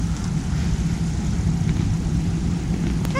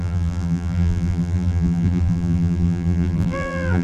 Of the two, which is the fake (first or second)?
second